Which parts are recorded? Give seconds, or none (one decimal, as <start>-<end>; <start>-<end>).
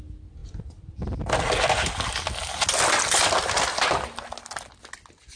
0.0-5.4